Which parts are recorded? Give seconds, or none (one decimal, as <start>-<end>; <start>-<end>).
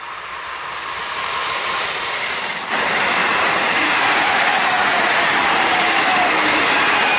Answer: 0.0-3.2; 5.2-7.2